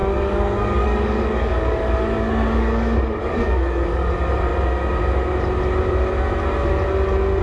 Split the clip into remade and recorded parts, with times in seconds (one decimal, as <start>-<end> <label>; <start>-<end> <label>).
0.0-4.1 remade; 4.1-7.4 recorded